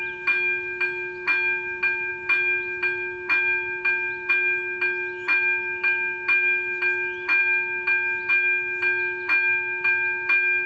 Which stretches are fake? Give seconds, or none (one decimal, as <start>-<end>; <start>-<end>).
none